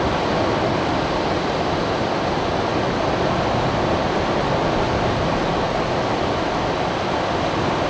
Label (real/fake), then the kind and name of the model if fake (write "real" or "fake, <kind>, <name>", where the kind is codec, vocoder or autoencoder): real